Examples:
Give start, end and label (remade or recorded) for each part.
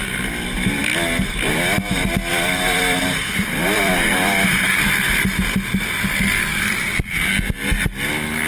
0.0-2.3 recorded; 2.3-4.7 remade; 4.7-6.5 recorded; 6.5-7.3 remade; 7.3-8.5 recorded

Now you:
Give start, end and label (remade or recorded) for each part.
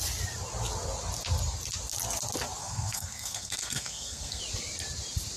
0.0-2.6 recorded; 2.6-4.4 remade; 4.4-5.4 recorded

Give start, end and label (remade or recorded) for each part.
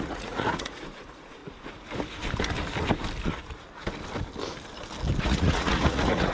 0.0-1.4 remade; 1.4-5.2 recorded; 5.2-6.3 remade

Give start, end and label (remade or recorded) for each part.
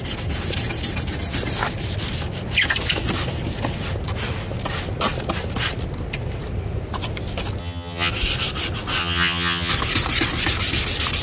0.0-7.6 recorded; 7.6-8.1 remade; 8.1-9.0 recorded; 9.0-9.7 remade; 9.7-11.2 recorded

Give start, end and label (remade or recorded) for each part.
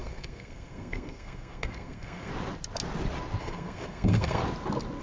0.0-2.3 remade; 2.3-3.4 recorded; 3.4-4.4 remade; 4.4-5.0 recorded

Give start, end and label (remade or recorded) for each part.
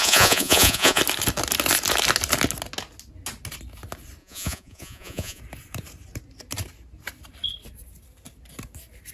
0.0-1.0 remade; 1.0-4.2 recorded; 4.2-5.4 remade; 5.4-9.1 recorded